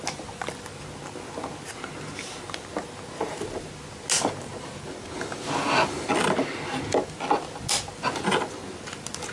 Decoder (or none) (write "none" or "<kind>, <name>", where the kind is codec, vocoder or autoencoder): none